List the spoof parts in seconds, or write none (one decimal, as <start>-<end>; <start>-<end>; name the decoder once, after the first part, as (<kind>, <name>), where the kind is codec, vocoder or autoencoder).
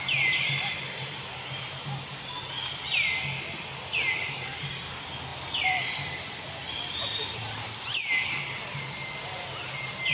none